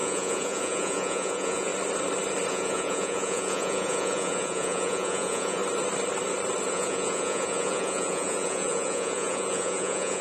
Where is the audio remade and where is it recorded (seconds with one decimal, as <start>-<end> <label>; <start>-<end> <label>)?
0.0-1.7 remade; 1.7-2.5 recorded; 2.5-5.6 remade; 5.6-6.7 recorded; 6.7-10.2 remade

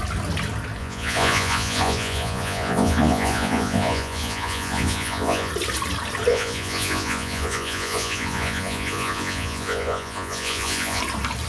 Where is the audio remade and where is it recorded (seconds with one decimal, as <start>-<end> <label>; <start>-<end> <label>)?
0.0-0.8 recorded; 0.8-5.5 remade; 5.5-6.3 recorded; 6.3-11.0 remade; 11.0-11.5 recorded

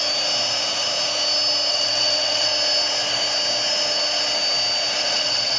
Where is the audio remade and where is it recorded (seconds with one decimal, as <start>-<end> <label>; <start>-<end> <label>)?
0.0-1.7 recorded; 1.7-2.5 remade; 2.5-5.0 recorded; 5.0-5.6 remade

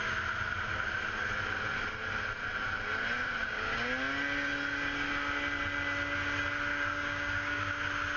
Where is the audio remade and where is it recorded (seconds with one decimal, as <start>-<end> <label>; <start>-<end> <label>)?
0.0-3.4 recorded; 3.4-3.9 remade; 3.9-6.7 recorded; 6.7-7.7 remade; 7.7-8.2 recorded

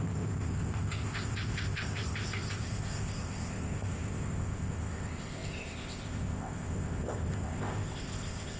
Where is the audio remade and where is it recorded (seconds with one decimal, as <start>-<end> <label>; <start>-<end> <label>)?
0.0-8.6 remade